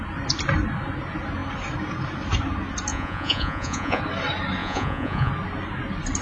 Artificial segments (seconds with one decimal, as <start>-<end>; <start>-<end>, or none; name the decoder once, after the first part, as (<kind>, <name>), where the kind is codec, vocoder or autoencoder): 2.9-4.0 (vocoder, Vocos); 4.6-5.3